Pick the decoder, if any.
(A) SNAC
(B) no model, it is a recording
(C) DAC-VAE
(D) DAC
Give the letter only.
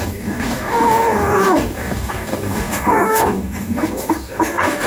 D